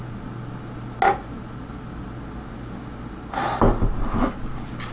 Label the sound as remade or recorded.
recorded